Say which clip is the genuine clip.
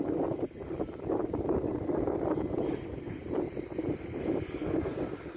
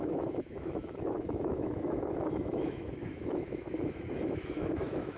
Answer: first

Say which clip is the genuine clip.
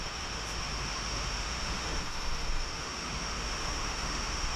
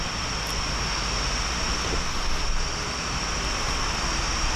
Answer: second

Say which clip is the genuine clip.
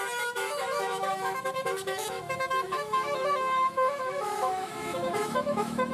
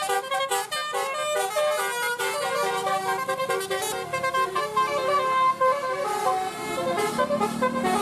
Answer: second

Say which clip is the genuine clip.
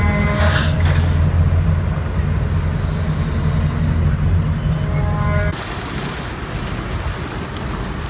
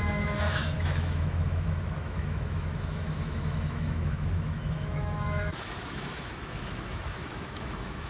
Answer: first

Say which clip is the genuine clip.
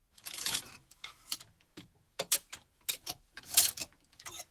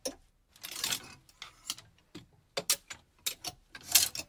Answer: second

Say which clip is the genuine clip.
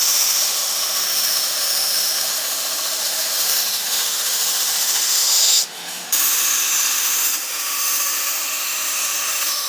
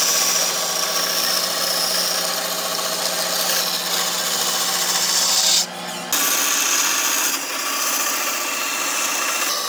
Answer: second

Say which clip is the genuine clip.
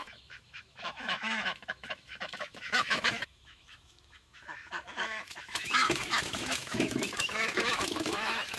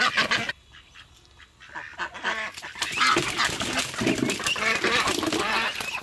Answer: second